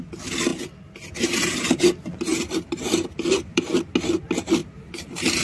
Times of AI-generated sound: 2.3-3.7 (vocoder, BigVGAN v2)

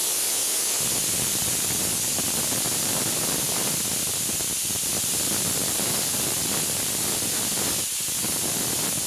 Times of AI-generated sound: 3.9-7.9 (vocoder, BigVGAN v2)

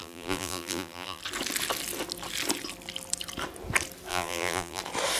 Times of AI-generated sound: 0.0-1.2 (vocoder, BigVGAN v2); 4.1-4.8

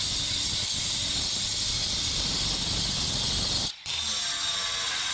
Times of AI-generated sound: none

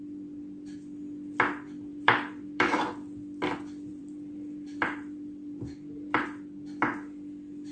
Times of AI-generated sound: 1.9-2.8 (vocoder, BigVGAN v2); 3.9-6.2